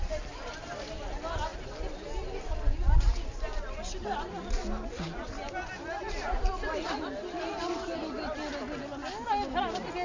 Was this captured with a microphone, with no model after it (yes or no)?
yes